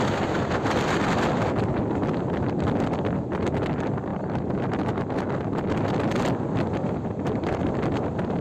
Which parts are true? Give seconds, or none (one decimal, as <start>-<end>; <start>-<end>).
4.1-6.2